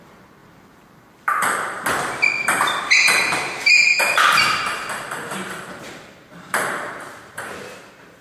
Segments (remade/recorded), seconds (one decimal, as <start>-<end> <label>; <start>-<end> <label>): 0.0-8.2 remade